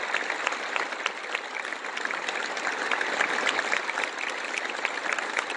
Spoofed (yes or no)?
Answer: no